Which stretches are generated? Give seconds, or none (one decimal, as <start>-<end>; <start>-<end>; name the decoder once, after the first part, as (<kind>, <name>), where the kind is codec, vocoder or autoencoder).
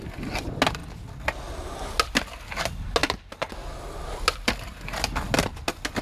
none